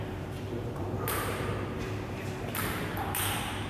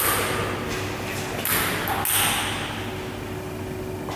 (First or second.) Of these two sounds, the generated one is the first